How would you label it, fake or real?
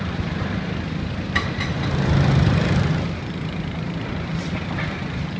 fake